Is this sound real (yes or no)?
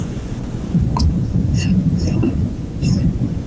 no